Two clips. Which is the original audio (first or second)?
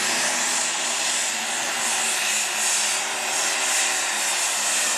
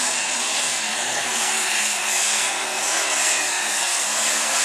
first